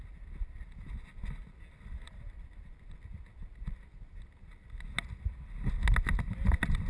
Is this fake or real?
real